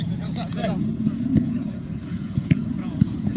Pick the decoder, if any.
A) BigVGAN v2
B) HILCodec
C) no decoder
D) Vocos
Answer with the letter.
D